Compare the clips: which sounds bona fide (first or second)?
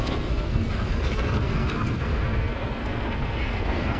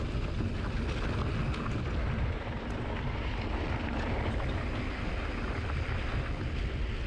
second